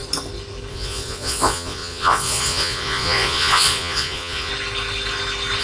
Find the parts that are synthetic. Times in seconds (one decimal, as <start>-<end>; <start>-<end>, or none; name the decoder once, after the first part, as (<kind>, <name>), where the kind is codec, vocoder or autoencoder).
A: 0.7-4.5 (vocoder, Vocos)